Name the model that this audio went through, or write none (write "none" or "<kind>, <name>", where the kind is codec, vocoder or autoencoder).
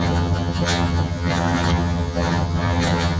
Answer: vocoder, HiFi-GAN